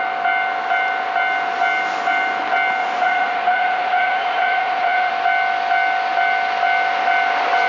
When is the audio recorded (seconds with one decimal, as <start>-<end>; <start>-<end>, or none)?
0.0-2.8; 5.1-7.7